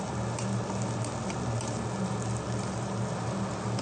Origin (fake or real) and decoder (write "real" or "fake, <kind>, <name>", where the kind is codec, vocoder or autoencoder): real